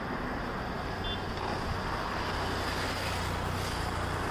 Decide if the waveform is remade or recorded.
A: recorded